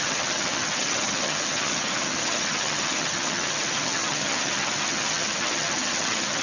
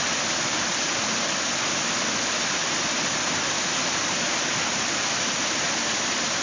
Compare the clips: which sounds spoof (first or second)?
first